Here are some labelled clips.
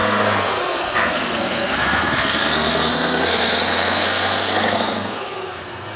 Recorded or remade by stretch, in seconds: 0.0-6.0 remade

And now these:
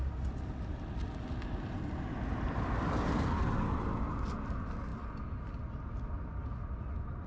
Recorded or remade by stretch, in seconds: 0.0-7.3 recorded

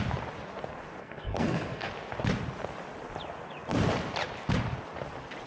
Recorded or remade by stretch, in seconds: 0.0-1.0 recorded; 1.0-1.9 remade; 1.9-5.5 recorded

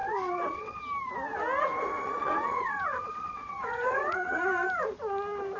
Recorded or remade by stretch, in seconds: 0.0-0.8 remade; 0.8-1.6 recorded; 1.6-4.4 remade; 4.4-5.6 recorded